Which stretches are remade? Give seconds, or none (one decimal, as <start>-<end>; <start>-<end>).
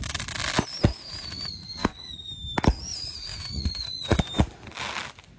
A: 0.9-2.2; 2.9-4.2